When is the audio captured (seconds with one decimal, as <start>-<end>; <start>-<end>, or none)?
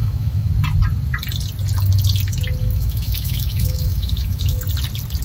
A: 0.5-2.6; 4.6-5.2